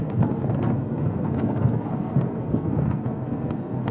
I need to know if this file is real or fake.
fake